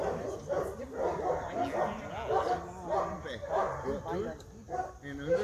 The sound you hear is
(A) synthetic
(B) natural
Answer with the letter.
B